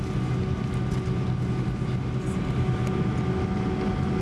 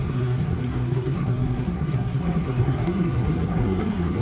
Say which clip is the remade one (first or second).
second